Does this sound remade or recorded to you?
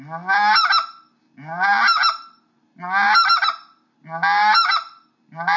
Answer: recorded